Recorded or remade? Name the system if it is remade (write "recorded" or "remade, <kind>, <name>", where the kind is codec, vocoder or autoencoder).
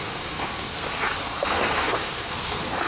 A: remade, codec, SNAC